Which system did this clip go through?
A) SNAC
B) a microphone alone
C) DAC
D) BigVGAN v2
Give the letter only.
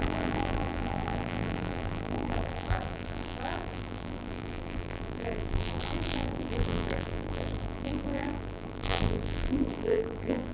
D